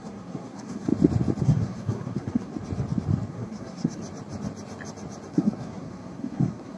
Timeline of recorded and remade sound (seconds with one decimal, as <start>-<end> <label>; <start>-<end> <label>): 0.0-0.9 remade; 0.9-1.4 recorded; 1.4-2.5 remade; 2.5-3.3 recorded; 3.3-4.0 remade; 4.0-5.3 recorded; 5.3-6.8 remade